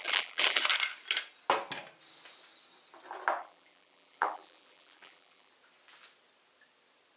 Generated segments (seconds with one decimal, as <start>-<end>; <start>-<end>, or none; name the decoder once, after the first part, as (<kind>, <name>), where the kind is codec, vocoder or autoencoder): 0.0-0.6 (vocoder, BigVGAN v2); 3.4-5.5